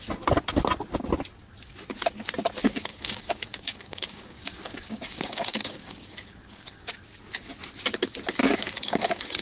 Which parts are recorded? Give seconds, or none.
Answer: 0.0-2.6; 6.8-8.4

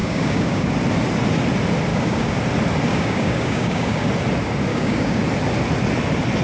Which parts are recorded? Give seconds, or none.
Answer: 0.7-1.9; 2.4-2.9; 4.1-4.7; 5.2-6.4

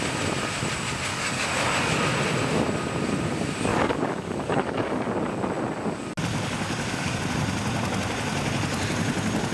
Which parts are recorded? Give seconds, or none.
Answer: 0.0-1.1; 2.0-3.7; 5.1-6.3; 7.2-9.5

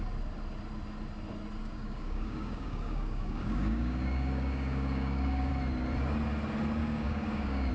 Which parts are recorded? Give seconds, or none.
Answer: 0.0-1.6; 5.5-6.8